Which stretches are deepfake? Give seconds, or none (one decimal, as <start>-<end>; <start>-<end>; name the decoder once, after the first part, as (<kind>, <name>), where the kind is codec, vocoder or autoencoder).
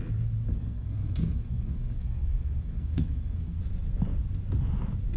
0.5-3.6 (codec, SNAC)